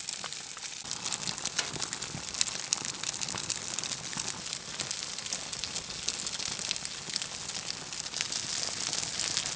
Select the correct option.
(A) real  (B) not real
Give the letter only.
A